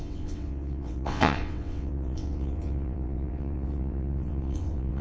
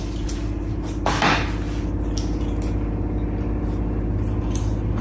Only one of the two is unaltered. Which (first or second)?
second